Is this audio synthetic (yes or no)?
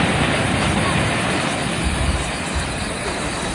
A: no